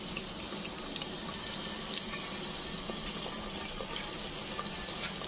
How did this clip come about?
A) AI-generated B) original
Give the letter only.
B